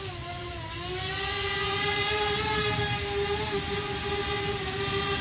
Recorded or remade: recorded